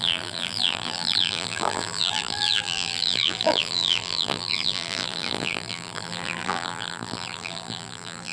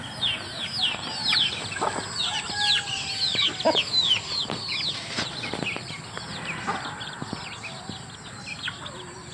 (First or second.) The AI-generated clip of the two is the first